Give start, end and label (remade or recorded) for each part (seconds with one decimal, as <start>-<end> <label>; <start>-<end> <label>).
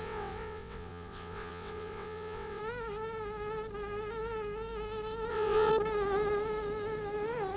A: 0.0-2.6 remade; 2.6-5.3 recorded; 5.3-5.7 remade; 5.7-7.6 recorded